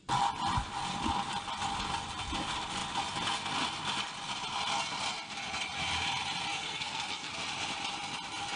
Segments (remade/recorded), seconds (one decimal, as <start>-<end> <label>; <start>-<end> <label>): 0.0-6.5 recorded; 6.5-7.3 remade; 7.3-8.6 recorded